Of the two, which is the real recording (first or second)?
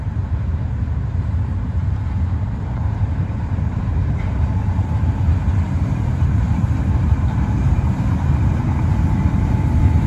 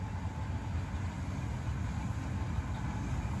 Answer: second